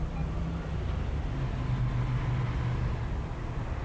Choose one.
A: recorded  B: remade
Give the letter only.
A